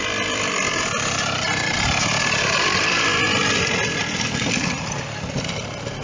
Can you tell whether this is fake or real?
fake